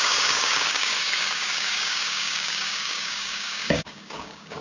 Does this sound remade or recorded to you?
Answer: remade